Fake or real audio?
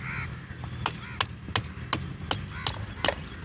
real